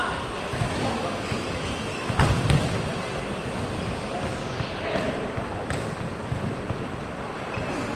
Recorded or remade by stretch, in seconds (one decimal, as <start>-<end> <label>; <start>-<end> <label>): 0.0-0.5 recorded; 0.5-2.2 remade; 2.2-8.0 recorded